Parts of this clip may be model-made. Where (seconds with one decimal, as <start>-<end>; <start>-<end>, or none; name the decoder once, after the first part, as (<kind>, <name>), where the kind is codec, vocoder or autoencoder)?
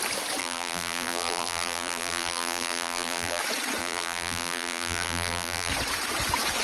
0.4-3.4 (vocoder, BigVGAN v2); 3.8-5.7